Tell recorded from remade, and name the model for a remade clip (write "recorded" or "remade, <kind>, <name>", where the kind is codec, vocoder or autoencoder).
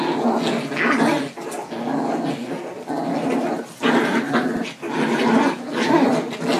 recorded